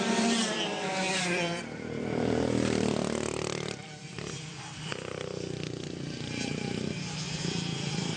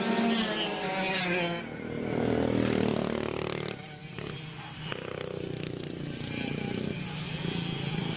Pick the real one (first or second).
second